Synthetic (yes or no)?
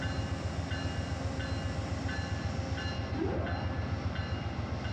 no